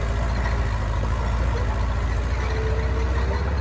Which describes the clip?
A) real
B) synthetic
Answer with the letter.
A